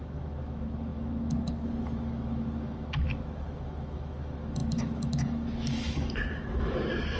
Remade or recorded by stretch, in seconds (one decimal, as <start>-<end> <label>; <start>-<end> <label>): 0.0-7.2 remade